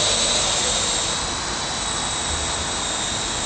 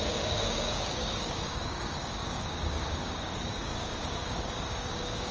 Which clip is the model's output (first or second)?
second